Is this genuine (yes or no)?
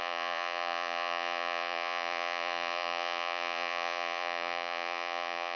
no